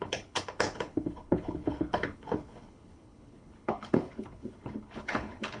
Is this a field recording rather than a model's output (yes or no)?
no